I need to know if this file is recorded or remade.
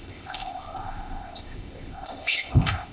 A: remade